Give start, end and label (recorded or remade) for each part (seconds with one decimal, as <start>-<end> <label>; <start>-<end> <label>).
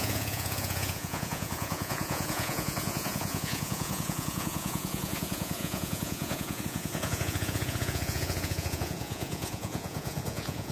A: 0.0-10.7 remade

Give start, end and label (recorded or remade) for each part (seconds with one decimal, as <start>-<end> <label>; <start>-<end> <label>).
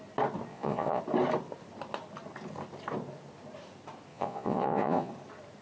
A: 0.0-0.5 recorded; 0.5-1.0 remade; 1.0-4.1 recorded; 4.1-5.1 remade; 5.1-5.6 recorded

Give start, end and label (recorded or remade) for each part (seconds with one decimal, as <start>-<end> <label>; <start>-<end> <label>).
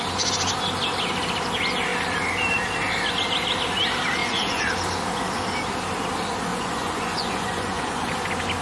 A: 0.0-4.2 recorded; 4.2-4.7 remade; 4.7-6.5 recorded; 6.5-8.1 remade; 8.1-8.6 recorded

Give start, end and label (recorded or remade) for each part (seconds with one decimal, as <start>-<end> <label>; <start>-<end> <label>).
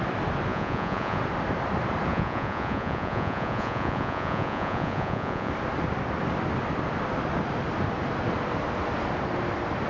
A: 0.0-0.5 recorded; 0.5-1.2 remade; 1.2-2.1 recorded; 2.1-5.5 remade; 5.5-9.9 recorded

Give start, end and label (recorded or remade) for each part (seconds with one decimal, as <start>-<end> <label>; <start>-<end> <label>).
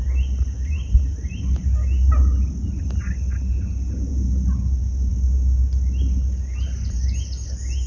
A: 0.0-7.9 recorded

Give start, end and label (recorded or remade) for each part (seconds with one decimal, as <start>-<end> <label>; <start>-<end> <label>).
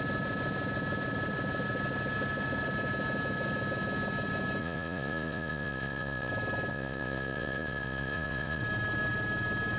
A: 0.0-4.6 recorded; 4.6-6.3 remade; 6.3-6.7 recorded; 6.7-8.6 remade; 8.6-9.8 recorded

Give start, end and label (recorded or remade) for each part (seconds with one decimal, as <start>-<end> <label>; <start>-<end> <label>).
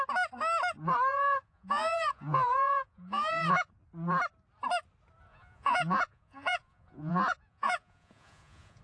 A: 0.0-1.1 recorded; 1.1-3.7 remade; 3.7-5.3 recorded; 5.3-8.8 remade